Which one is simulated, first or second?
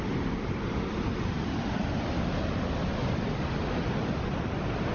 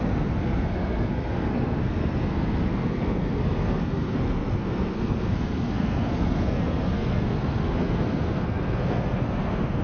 second